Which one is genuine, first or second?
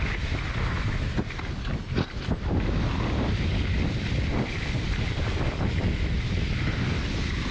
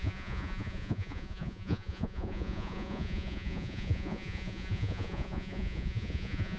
first